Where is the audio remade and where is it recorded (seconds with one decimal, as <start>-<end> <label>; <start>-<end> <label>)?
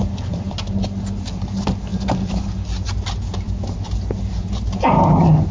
0.0-5.5 recorded